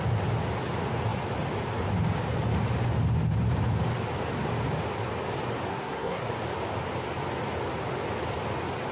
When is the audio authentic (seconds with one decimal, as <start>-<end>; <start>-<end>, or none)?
0.0-5.7; 6.3-8.9